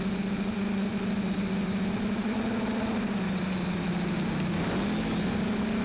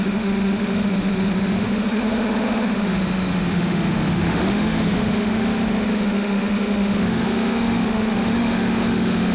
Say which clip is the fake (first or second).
second